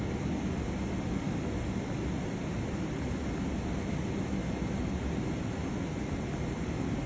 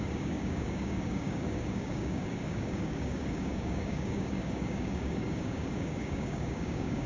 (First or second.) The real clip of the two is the first